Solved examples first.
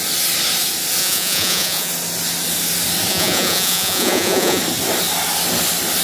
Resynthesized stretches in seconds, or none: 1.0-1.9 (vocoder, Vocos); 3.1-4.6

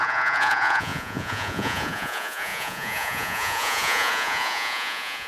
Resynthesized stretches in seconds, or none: 0.0-5.3 (vocoder, Vocos)